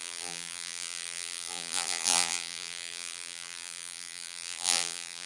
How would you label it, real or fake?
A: fake